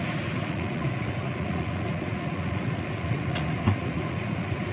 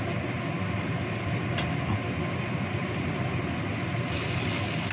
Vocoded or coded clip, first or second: first